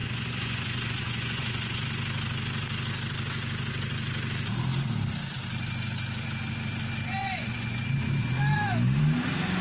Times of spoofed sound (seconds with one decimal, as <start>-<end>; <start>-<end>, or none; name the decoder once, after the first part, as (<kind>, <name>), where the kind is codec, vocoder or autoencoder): 0.0-1.8 (vocoder, Vocos); 7.2-7.8